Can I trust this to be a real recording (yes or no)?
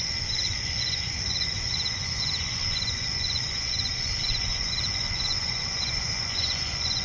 no